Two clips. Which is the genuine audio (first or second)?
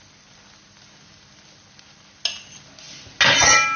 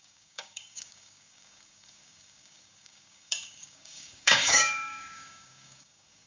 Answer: first